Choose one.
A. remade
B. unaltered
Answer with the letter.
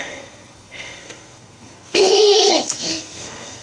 A